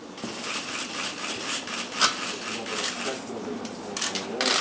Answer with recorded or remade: recorded